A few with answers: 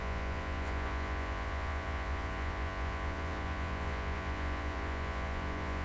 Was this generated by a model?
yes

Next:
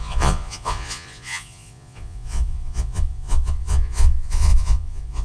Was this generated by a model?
yes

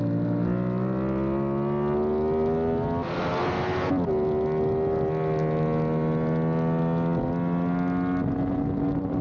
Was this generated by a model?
no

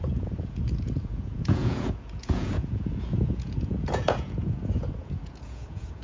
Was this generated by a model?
yes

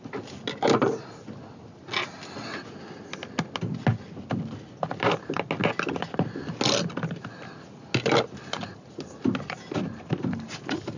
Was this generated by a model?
no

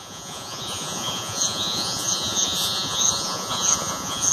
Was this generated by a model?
yes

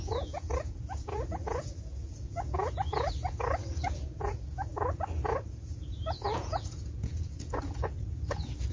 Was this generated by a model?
yes